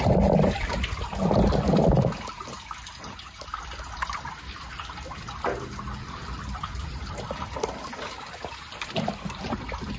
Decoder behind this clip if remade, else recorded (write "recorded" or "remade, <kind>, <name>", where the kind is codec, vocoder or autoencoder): recorded